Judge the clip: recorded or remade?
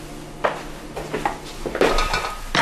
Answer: recorded